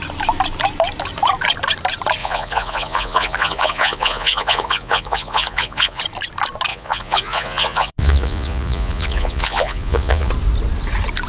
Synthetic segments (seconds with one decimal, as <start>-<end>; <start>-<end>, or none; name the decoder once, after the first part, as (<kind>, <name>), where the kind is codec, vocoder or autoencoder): 2.2-6.0 (vocoder, Vocos); 6.7-10.3

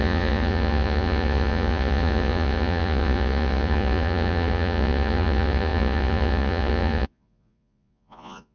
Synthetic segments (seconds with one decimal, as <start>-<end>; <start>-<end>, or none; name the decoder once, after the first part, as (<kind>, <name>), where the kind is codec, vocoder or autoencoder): 0.0-8.5 (vocoder, Vocos)

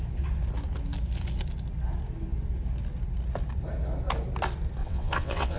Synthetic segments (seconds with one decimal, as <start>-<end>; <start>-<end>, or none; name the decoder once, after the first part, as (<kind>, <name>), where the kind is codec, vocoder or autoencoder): 4.8-5.6 (vocoder, WaveNeXt)

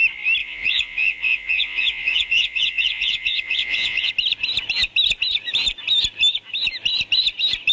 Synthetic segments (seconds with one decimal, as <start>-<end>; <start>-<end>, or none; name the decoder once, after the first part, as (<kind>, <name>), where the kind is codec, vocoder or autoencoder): 0.4-4.1 (vocoder, Vocos)

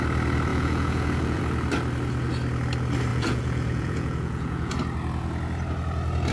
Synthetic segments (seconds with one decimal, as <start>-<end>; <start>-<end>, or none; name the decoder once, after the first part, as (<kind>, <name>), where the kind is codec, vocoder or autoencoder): 0.5-1.4 (vocoder, Vocos); 3.1-4.7

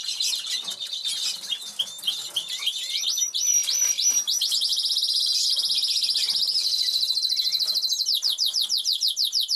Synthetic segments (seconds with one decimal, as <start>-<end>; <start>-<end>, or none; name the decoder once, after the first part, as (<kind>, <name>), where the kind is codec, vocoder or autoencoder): none